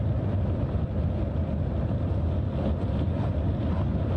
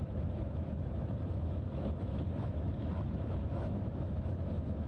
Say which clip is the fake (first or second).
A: second